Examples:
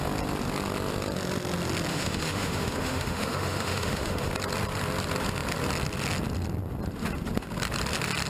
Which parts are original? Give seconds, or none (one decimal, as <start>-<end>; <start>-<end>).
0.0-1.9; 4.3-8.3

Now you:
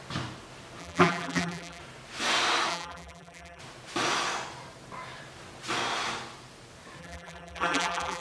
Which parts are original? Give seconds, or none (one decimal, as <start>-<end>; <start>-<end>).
0.0-0.8; 1.8-2.7; 3.6-7.0

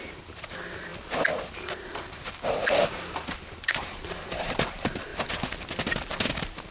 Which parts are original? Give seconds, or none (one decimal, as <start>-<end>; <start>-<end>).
0.9-1.5; 5.1-6.7

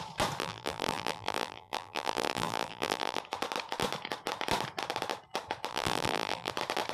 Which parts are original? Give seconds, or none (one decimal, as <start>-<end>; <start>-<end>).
0.0-0.4; 3.2-5.7; 6.5-6.9

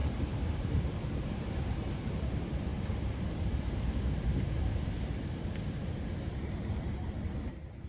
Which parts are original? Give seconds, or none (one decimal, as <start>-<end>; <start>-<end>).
none

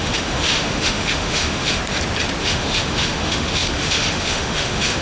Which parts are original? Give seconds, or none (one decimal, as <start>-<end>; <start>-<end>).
1.8-2.4